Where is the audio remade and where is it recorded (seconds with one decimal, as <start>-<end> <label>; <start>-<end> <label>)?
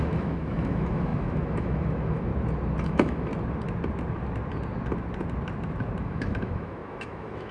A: 0.0-2.3 remade; 2.3-2.8 recorded; 2.8-3.3 remade; 3.3-6.0 recorded; 6.0-7.5 remade